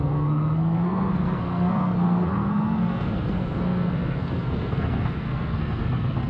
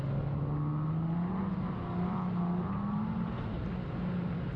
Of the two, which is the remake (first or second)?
first